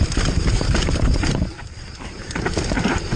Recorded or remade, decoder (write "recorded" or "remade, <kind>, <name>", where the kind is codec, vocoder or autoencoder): recorded